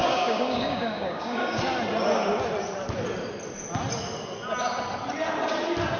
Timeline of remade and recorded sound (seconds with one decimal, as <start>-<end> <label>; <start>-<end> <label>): 0.0-1.6 remade; 1.6-6.0 recorded